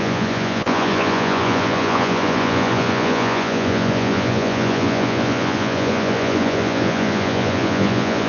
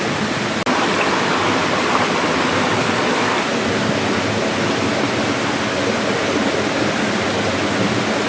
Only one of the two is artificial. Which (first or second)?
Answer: first